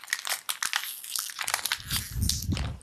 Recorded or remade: recorded